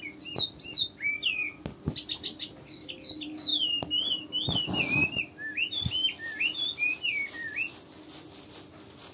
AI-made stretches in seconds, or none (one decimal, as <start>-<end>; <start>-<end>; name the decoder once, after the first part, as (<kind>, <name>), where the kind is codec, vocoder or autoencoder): none